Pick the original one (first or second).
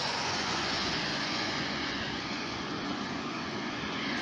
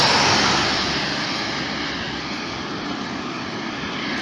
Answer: second